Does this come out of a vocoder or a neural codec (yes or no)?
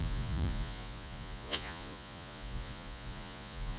yes